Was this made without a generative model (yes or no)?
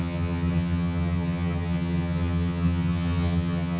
no